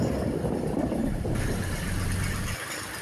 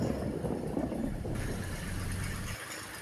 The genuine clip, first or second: second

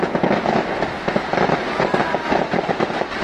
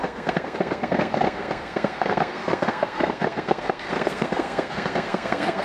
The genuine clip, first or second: first